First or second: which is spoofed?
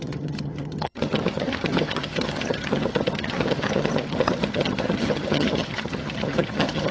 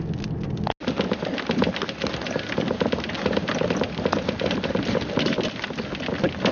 first